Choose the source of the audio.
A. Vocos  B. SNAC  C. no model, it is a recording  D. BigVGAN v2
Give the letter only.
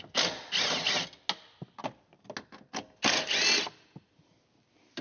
C